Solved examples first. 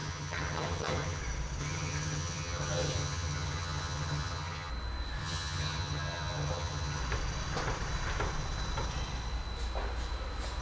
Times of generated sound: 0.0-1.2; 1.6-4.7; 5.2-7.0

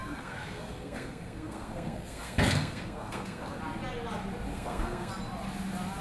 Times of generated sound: 0.0-3.6; 4.5-5.1

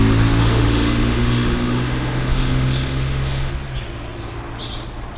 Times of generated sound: 0.4-3.5

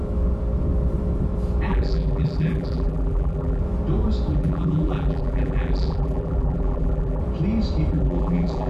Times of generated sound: 1.7-3.6; 4.3-7.2; 7.9-8.7

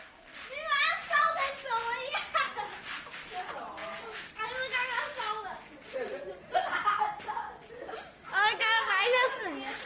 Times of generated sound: none

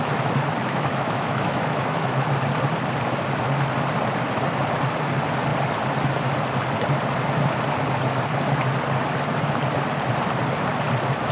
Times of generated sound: 0.6-2.3

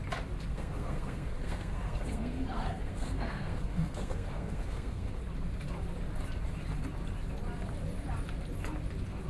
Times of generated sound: 0.5-5.2